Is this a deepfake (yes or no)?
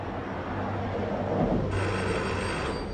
no